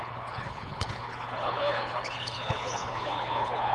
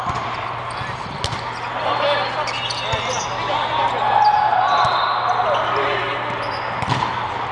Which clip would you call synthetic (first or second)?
first